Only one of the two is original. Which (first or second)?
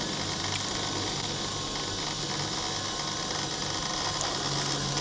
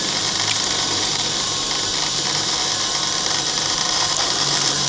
first